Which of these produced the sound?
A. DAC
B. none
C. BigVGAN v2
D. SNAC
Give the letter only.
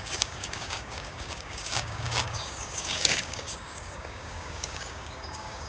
A